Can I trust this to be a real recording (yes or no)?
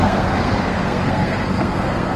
no